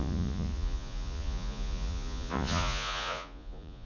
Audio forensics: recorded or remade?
remade